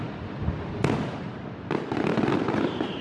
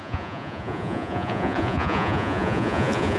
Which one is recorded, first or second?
first